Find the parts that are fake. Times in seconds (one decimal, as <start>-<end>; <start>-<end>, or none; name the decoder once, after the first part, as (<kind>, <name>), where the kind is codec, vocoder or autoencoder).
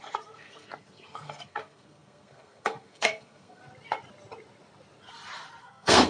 0.0-3.6 (codec, SNAC); 5.6-6.1